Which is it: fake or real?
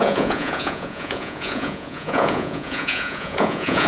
fake